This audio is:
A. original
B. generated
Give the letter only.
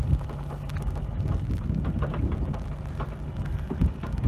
A